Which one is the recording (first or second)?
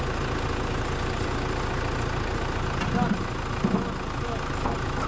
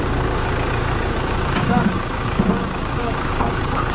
first